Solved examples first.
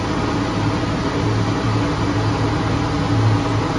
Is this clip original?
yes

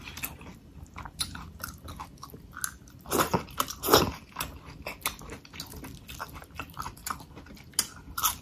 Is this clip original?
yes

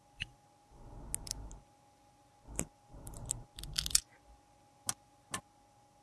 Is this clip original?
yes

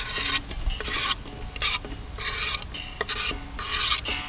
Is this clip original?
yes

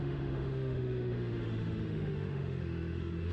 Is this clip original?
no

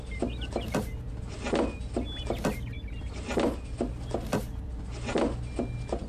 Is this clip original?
yes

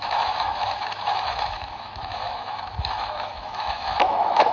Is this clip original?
no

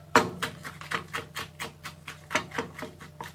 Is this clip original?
yes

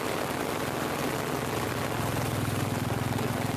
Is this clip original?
yes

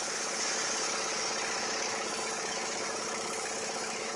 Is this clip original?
no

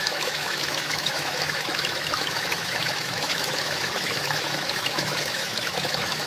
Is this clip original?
no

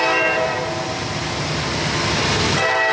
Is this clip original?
yes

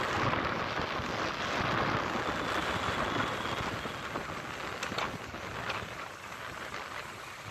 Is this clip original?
yes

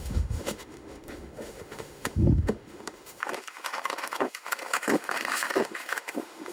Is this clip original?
no